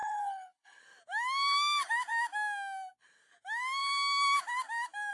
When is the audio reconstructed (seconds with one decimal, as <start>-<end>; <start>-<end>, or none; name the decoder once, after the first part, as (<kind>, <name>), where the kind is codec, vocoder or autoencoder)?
0.0-0.8 (codec, HILCodec)